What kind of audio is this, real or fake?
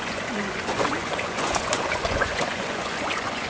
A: fake